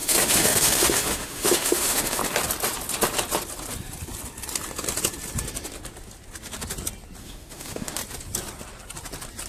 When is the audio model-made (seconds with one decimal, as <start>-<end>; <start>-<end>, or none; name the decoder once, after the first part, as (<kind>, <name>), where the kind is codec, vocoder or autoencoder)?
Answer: 0.0-2.2 (autoencoder, DAC-VAE); 7.2-8.0